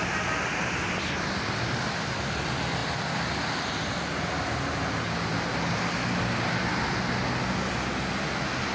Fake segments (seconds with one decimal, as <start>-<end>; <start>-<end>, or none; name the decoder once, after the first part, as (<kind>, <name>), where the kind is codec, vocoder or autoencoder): none